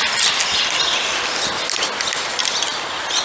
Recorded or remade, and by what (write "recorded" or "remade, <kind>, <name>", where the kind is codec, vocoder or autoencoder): recorded